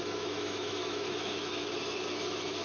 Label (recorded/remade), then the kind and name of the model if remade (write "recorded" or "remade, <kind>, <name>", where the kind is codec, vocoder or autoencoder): remade, autoencoder, DAC-VAE